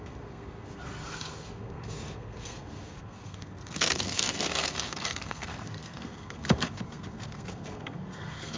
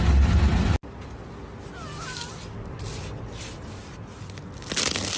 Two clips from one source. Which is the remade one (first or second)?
first